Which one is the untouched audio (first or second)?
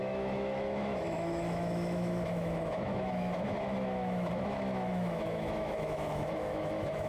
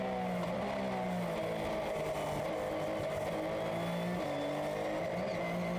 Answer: second